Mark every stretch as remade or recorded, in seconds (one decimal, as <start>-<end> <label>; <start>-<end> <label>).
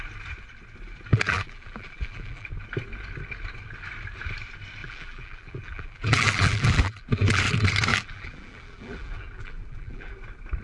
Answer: 0.0-1.1 recorded; 1.1-2.5 remade; 2.5-4.8 recorded; 4.8-7.4 remade; 7.4-7.9 recorded; 7.9-10.1 remade; 10.1-10.6 recorded